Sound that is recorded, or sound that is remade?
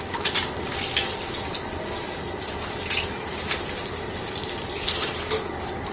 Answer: recorded